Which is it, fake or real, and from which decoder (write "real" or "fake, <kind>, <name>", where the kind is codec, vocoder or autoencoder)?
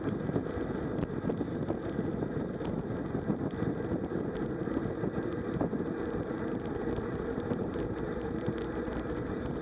real